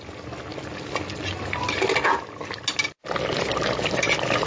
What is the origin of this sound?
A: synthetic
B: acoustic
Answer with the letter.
B